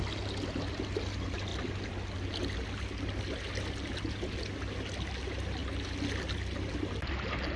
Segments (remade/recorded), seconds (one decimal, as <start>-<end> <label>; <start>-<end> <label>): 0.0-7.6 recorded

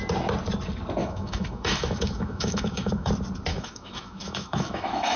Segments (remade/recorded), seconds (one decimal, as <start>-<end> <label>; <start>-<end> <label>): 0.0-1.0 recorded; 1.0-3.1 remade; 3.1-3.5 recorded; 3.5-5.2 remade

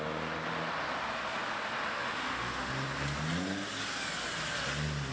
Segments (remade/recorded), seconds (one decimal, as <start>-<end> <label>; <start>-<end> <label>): 0.0-1.9 recorded; 1.9-2.7 remade; 2.7-5.1 recorded

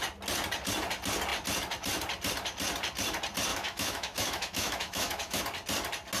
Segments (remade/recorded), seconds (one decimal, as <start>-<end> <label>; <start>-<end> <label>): 0.0-3.5 recorded; 3.5-5.4 remade; 5.4-6.2 recorded

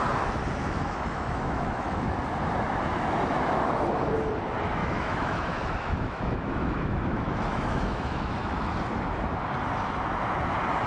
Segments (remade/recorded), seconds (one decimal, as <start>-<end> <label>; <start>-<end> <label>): 0.0-0.6 recorded; 0.6-2.1 remade; 2.1-4.8 recorded; 4.8-8.7 remade; 8.7-10.9 recorded